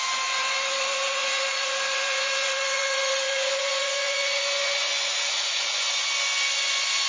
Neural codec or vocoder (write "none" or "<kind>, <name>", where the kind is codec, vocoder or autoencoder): vocoder, Vocos